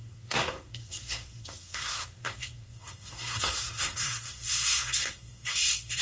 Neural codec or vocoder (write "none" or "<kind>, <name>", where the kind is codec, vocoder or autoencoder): codec, SNAC